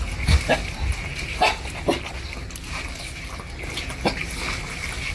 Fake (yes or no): no